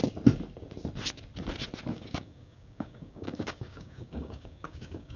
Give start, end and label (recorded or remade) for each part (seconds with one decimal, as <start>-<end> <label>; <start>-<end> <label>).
0.0-1.9 recorded; 1.9-5.2 remade